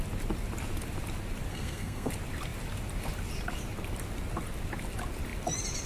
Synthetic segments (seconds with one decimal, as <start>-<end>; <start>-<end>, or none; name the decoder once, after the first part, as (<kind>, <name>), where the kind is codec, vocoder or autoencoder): 1.5-2.1 (codec, SNAC)